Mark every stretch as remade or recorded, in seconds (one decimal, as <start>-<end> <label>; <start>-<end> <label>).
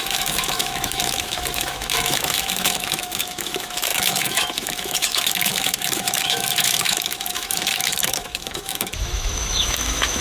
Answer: 0.0-10.2 remade